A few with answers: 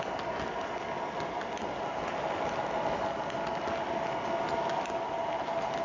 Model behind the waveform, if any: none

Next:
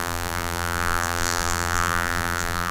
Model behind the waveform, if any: vocoder, BigVGAN v2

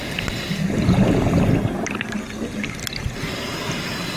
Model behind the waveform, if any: none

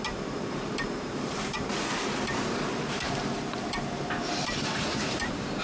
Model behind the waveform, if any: vocoder, BigVGAN v2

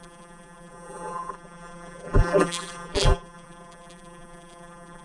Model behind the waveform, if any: vocoder, BigVGAN v2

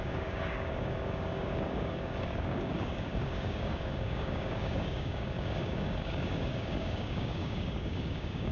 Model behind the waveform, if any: codec, DAC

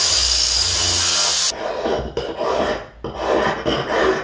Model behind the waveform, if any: none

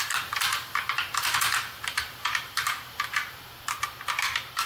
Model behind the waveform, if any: vocoder, BigVGAN v2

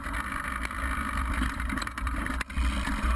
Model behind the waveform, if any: none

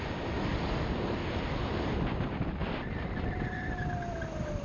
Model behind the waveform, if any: none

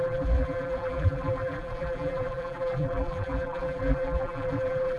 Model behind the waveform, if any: vocoder, BigVGAN v2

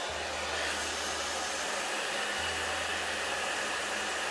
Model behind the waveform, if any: none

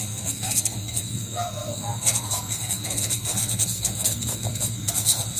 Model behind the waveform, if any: codec, SNAC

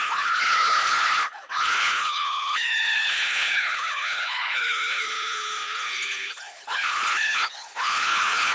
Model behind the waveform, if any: codec, HILCodec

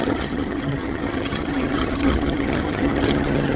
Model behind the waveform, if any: vocoder, HiFi-GAN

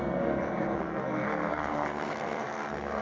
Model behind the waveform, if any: codec, SNAC